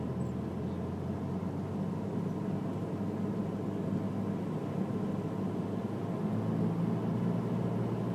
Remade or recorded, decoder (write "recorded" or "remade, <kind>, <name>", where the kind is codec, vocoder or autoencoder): recorded